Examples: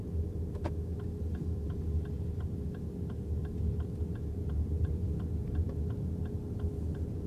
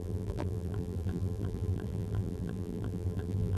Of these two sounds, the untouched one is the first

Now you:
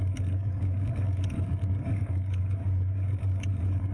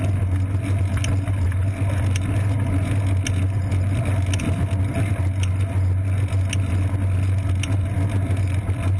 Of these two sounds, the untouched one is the second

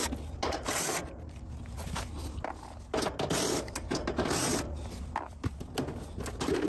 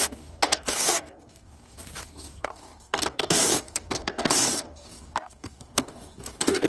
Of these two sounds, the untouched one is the first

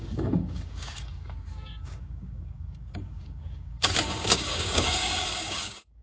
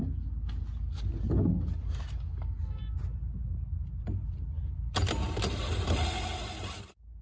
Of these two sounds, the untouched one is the second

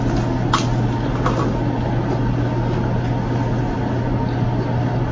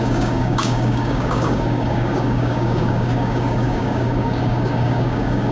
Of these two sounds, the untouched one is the first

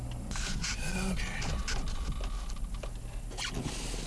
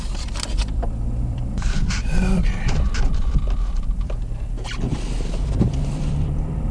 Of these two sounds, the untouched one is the first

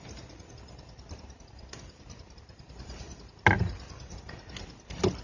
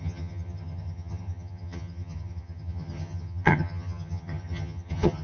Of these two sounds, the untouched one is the first